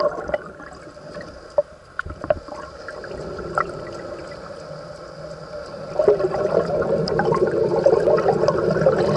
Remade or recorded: recorded